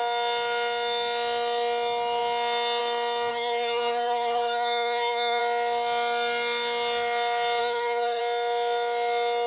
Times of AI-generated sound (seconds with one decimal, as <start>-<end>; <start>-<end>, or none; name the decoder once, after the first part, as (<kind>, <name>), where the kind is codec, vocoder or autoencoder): 3.3-5.4 (codec, SNAC); 7.6-8.2